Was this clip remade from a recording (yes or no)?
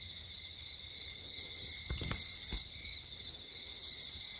no